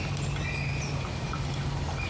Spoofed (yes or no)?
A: no